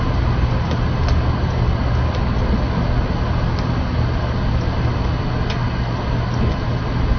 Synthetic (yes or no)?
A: no